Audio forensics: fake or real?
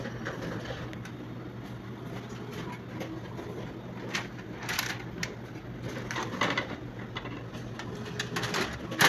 real